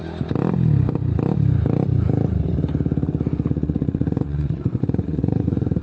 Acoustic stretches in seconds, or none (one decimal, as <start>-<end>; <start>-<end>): 0.0-3.5